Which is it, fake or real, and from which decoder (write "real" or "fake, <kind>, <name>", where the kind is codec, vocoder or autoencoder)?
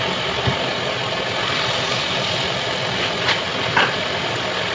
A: fake, vocoder, BigVGAN v2